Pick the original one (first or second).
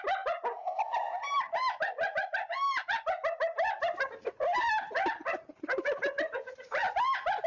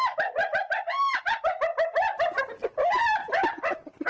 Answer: first